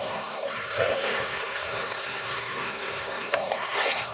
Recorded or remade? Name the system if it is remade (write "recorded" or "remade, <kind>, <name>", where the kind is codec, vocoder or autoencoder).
remade, codec, SNAC